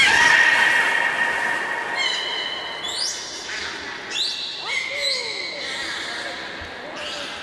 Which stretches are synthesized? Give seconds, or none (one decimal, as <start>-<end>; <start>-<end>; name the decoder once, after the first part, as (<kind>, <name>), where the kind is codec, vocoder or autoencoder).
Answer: 4.8-5.4 (autoencoder, DAC-VAE)